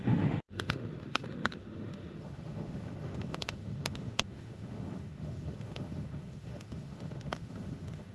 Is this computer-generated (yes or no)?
yes